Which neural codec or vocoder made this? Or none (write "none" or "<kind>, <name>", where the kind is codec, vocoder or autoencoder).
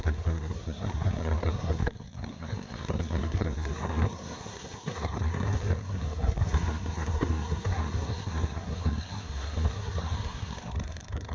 codec, SNAC